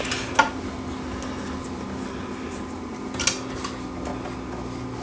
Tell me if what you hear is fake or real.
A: real